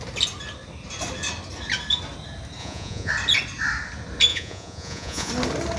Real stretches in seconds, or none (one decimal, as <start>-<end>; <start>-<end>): 0.0-2.6; 3.1-4.3; 5.3-5.8